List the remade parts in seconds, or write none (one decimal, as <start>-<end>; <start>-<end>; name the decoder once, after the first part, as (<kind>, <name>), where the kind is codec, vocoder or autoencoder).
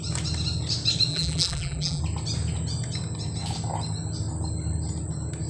1.1-2.0 (vocoder, BigVGAN v2)